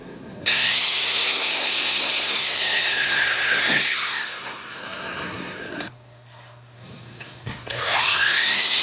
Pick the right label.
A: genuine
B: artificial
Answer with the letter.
B